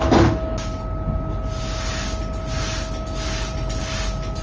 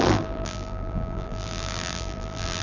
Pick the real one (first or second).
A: first